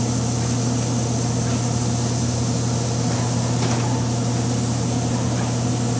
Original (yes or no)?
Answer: yes